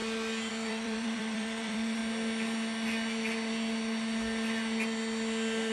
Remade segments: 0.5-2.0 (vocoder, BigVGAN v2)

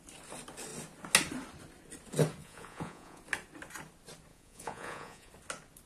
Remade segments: 2.4-3.2 (vocoder, Vocos); 4.3-5.3

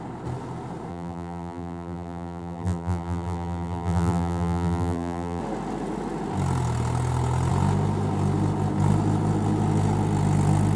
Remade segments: 0.9-5.4 (vocoder, BigVGAN v2)

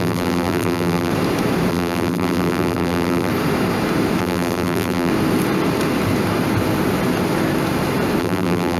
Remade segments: 0.0-1.1 (vocoder, BigVGAN v2); 1.7-3.3; 4.2-5.1; 8.2-8.8